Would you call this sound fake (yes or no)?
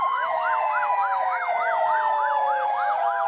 yes